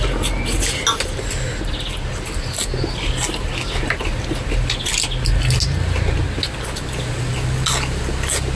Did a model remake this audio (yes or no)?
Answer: no